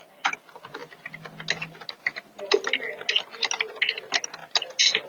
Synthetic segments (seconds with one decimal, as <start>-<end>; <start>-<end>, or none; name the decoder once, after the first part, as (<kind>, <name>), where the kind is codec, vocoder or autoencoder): none